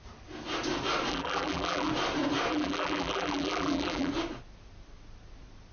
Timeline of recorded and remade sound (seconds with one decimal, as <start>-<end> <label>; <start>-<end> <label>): 0.0-1.1 recorded; 1.1-1.9 remade; 1.9-2.5 recorded; 2.5-4.1 remade; 4.1-5.7 recorded